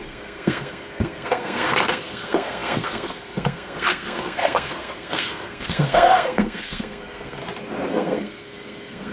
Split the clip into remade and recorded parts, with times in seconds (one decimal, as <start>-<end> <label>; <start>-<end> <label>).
0.0-7.4 remade; 7.4-7.9 recorded; 7.9-9.1 remade